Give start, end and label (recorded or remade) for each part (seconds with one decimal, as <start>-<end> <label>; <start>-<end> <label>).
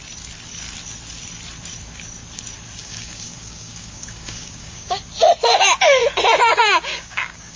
0.0-2.8 recorded; 2.8-5.0 remade; 5.0-6.5 recorded; 6.5-7.6 remade